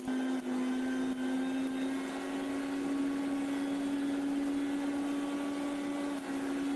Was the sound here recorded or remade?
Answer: recorded